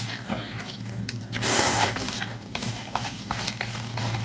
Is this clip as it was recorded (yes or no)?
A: no